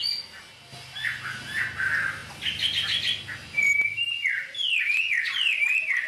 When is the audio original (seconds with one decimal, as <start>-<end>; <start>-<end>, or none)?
0.0-6.1